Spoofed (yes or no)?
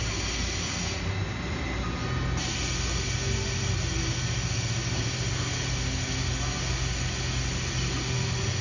no